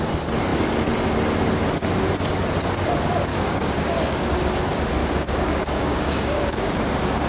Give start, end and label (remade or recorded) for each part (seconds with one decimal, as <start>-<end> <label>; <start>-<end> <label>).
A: 0.0-3.3 recorded; 3.3-4.4 remade; 4.4-5.0 recorded; 5.0-6.8 remade; 6.8-7.3 recorded